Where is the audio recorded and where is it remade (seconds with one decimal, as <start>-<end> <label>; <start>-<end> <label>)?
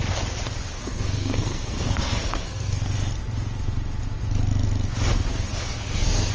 0.0-0.7 recorded; 0.7-2.8 remade; 2.8-5.3 recorded; 5.3-6.3 remade